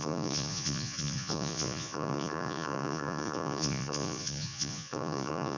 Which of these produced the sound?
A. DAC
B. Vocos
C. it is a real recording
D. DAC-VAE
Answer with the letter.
B